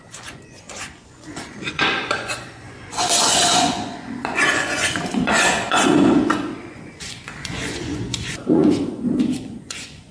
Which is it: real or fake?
fake